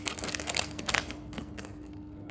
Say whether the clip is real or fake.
fake